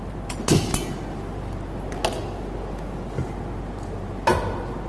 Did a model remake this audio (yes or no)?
no